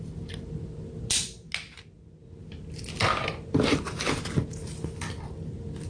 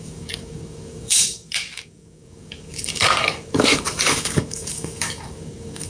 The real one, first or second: first